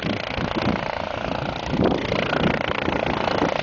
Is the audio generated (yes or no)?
no